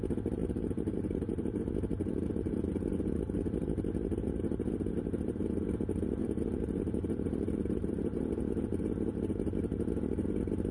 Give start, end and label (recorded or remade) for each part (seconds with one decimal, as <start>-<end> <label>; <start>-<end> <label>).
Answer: 0.0-0.4 recorded; 0.4-4.7 remade; 4.7-6.2 recorded; 6.2-8.4 remade; 8.4-10.7 recorded

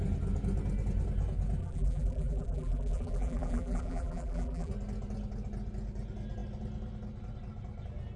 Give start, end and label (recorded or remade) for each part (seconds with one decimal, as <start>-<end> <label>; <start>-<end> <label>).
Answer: 0.0-1.6 recorded; 1.6-4.7 remade; 4.7-8.2 recorded

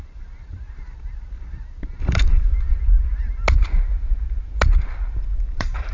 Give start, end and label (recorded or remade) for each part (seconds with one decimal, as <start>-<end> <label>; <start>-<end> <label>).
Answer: 0.0-2.5 remade; 2.5-5.4 recorded; 5.4-5.9 remade

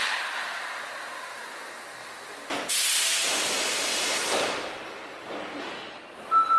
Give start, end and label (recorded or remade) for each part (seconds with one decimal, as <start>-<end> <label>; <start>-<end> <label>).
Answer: 0.0-3.1 recorded; 3.1-6.6 remade

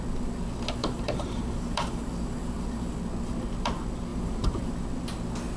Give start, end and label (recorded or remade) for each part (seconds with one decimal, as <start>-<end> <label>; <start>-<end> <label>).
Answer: 0.0-0.8 recorded; 0.8-2.0 remade; 2.0-4.1 recorded; 4.1-4.7 remade; 4.7-5.6 recorded

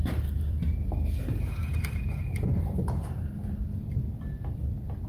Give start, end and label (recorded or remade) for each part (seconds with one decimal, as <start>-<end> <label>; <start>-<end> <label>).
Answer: 0.0-0.6 remade; 0.6-1.6 recorded; 1.6-2.8 remade; 2.8-5.1 recorded